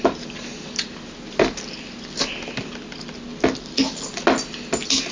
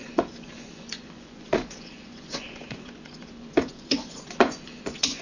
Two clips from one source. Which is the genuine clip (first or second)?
first